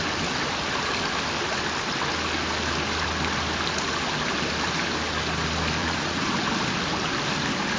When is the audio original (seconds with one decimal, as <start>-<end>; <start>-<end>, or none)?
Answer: 0.0-5.8; 6.3-7.8